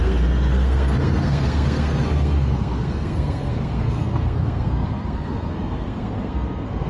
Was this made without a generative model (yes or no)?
no